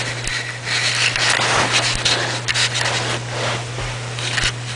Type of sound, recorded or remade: recorded